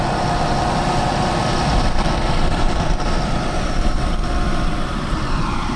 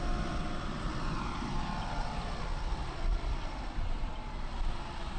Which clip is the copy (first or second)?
first